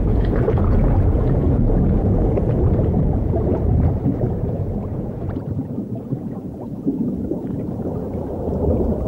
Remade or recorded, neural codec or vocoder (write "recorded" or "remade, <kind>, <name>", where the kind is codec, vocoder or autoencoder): remade, vocoder, Vocos